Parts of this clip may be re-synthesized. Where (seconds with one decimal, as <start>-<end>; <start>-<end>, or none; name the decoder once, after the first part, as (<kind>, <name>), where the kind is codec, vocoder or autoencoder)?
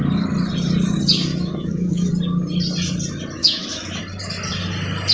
1.3-2.1 (autoencoder, DAC-VAE); 3.4-4.0